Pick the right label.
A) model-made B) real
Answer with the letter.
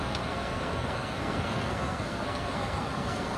A